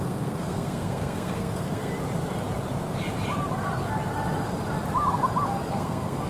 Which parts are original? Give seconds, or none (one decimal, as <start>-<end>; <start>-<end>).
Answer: 1.9-5.7